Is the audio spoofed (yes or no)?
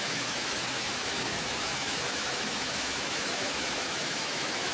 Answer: yes